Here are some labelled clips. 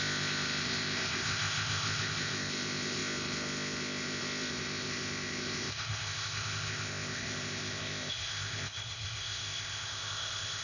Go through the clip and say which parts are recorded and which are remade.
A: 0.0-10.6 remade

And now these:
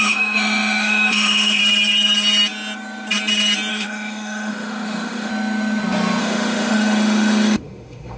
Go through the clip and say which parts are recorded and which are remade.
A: 0.0-1.6 remade; 1.6-3.7 recorded; 3.7-5.3 remade; 5.3-6.2 recorded; 6.2-8.2 remade

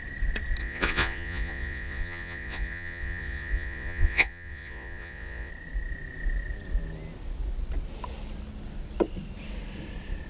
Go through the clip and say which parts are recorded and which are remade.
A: 0.0-0.6 recorded; 0.6-5.5 remade; 5.5-10.3 recorded

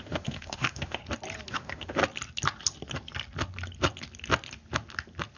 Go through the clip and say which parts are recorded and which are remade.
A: 0.0-1.0 remade; 1.0-1.5 recorded; 1.5-2.0 remade; 2.0-5.4 recorded

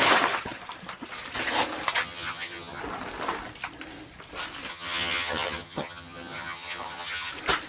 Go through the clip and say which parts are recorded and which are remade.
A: 0.0-2.0 recorded; 2.0-2.8 remade; 2.8-4.7 recorded; 4.7-7.3 remade; 7.3-7.7 recorded

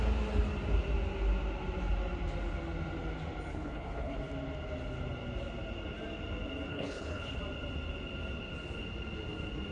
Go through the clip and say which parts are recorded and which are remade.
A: 0.0-3.5 recorded; 3.5-4.2 remade; 4.2-6.7 recorded; 6.7-7.4 remade; 7.4-9.7 recorded

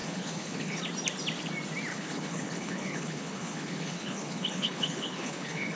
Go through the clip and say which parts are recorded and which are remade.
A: 0.0-0.8 remade; 0.8-1.9 recorded; 1.9-5.8 remade